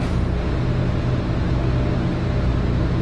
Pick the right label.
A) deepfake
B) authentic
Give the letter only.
B